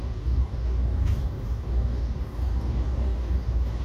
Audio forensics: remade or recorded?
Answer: remade